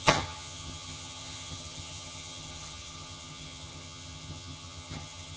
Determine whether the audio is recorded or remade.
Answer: remade